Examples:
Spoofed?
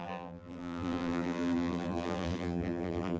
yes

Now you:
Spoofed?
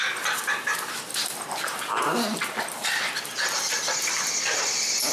yes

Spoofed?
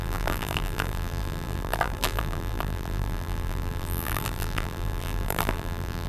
yes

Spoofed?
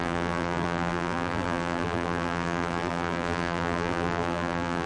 yes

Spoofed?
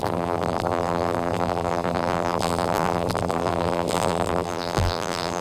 yes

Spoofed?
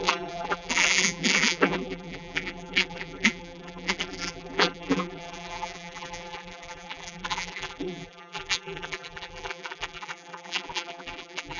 yes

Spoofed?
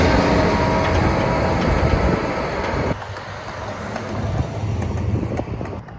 no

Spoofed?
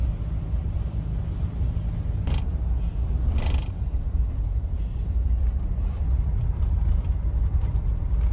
no